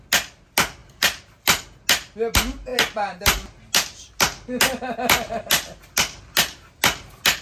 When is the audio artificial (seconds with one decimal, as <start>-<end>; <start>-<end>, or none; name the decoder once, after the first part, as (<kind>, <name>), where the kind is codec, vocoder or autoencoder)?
0.8-1.6 (vocoder, BigVGAN v2)